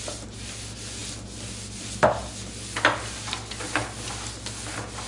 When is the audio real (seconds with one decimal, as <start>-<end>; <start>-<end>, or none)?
0.0-5.1